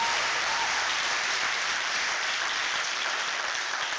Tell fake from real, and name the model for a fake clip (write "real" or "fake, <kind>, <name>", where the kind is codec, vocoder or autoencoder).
fake, vocoder, BigVGAN v2